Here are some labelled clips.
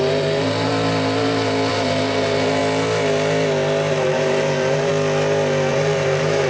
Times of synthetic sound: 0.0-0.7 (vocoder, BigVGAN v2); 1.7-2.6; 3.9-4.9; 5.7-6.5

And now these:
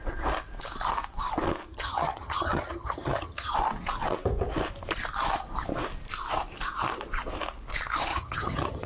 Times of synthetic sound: 1.7-3.5 (vocoder, HiFi-GAN); 8.1-8.9

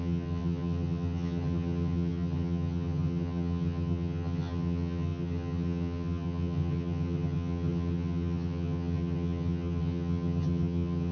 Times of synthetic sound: 0.0-11.1 (vocoder, HiFi-GAN)

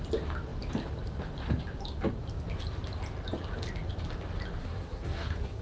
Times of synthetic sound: 4.6-5.6 (codec, SNAC)

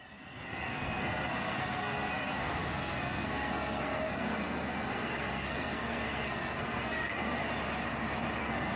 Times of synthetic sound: 0.0-7.4 (codec, SNAC); 8.4-8.8

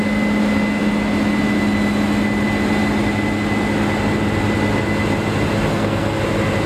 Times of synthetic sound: 5.7-6.2 (codec, SNAC)

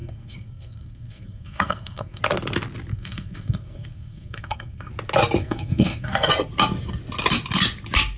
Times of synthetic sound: 0.0-2.2 (codec, SNAC); 2.9-4.9; 5.4-6.3